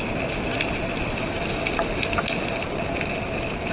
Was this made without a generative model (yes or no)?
yes